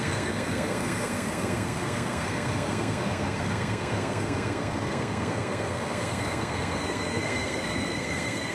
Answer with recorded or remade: remade